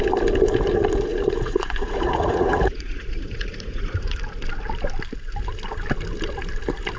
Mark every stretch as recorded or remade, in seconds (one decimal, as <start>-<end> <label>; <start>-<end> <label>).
0.0-1.1 recorded; 1.1-4.2 remade; 4.2-7.0 recorded